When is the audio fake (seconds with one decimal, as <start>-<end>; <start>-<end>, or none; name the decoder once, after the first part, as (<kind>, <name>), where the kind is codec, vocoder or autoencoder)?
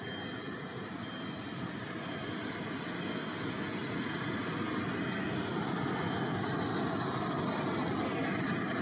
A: 3.8-4.5 (vocoder, Vocos)